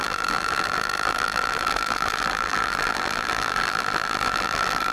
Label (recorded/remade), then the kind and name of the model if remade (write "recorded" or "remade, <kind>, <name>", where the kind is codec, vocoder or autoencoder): remade, vocoder, BigVGAN v2